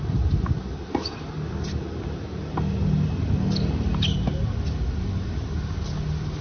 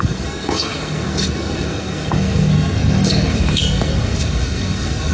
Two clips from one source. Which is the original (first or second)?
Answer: first